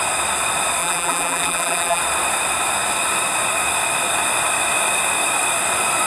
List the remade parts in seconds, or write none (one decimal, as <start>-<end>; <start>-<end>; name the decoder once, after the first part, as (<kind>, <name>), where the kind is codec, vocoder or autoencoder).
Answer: 0.8-2.0 (vocoder, BigVGAN v2)